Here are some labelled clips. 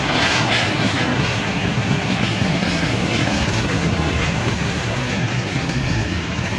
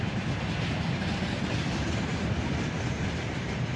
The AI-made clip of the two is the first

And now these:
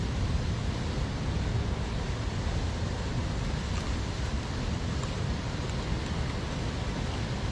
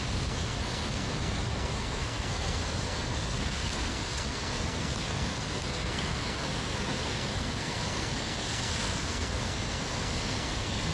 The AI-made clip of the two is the second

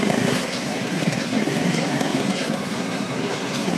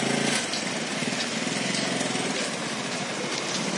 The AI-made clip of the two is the first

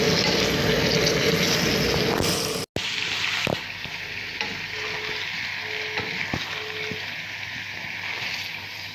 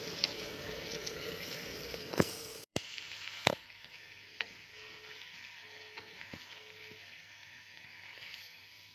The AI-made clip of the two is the second